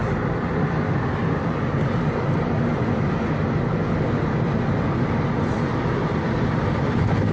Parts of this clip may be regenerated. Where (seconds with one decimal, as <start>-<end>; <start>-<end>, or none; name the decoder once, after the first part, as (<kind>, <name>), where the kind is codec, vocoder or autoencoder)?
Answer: none